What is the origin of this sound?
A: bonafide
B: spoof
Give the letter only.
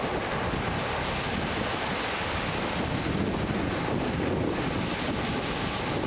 A